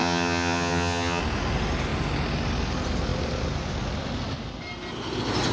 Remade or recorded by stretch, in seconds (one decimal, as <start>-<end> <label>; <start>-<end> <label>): 0.0-1.2 remade; 1.2-5.5 recorded